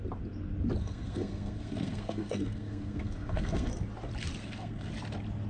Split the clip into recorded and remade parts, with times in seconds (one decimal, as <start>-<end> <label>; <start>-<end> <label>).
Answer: 0.0-0.8 recorded; 0.8-3.7 remade; 3.7-4.4 recorded; 4.4-4.9 remade; 4.9-5.5 recorded